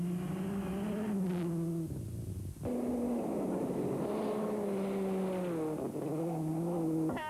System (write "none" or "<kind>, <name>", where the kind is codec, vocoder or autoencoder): none